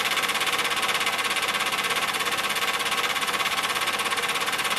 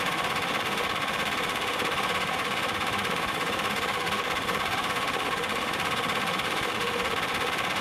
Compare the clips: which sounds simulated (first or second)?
second